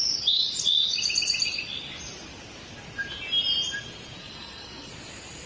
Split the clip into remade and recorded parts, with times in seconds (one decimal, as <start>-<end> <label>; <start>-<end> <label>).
0.0-4.2 recorded; 4.2-4.9 remade; 4.9-5.5 recorded

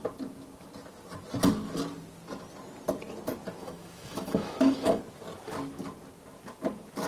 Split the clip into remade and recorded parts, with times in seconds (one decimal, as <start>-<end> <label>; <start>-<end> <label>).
0.0-3.6 recorded; 3.6-5.0 remade; 5.0-7.1 recorded

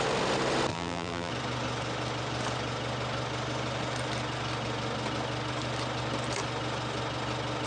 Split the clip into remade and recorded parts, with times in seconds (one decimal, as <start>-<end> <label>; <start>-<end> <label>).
0.0-0.7 recorded; 0.7-1.3 remade; 1.3-7.7 recorded

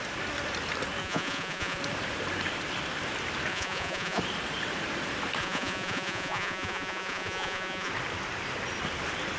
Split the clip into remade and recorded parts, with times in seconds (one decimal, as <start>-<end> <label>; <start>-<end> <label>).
0.0-1.0 recorded; 1.0-1.8 remade; 1.8-3.5 recorded; 3.5-4.2 remade; 4.2-5.4 recorded; 5.4-7.9 remade; 7.9-9.4 recorded

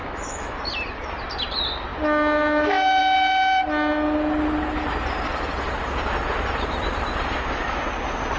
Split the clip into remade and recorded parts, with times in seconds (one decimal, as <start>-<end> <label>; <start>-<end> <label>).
0.0-0.7 remade; 0.7-8.4 recorded

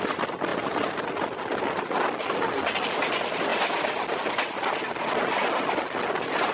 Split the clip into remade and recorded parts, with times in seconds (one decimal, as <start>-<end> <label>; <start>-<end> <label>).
0.0-6.5 recorded

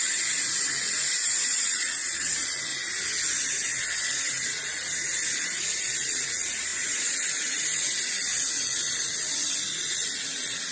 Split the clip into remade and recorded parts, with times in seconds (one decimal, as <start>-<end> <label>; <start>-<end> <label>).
0.0-2.7 remade; 2.7-3.4 recorded; 3.4-10.7 remade